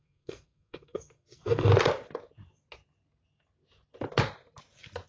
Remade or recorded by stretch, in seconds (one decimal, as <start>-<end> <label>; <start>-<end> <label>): 0.0-1.7 remade; 1.7-5.1 recorded